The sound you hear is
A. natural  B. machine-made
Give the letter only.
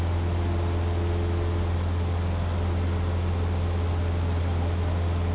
A